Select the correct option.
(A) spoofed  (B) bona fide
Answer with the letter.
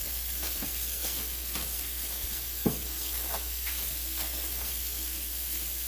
A